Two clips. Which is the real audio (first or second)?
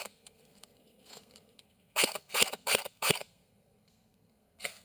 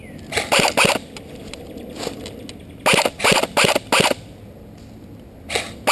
second